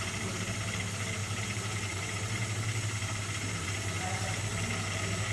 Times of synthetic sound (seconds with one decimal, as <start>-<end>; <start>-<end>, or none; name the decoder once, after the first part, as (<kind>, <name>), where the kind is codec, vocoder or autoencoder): 1.2-4.4 (vocoder, BigVGAN v2)